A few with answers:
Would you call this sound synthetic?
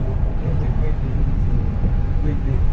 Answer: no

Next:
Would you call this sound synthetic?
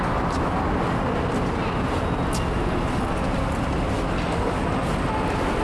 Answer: no